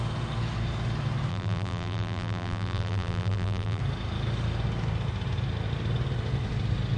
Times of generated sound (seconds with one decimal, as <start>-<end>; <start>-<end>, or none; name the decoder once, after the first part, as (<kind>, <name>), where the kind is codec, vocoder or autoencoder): 1.3-3.8 (vocoder, BigVGAN v2)